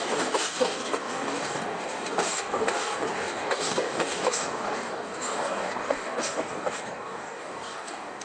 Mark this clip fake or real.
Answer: fake